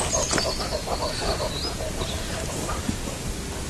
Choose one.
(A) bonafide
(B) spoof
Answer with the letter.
A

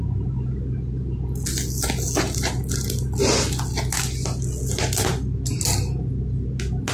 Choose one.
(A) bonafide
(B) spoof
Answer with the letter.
A